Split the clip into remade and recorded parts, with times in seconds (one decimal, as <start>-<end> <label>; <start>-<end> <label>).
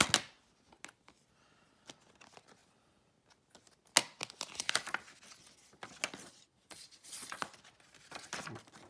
0.0-6.2 recorded; 6.2-7.5 remade; 7.5-8.9 recorded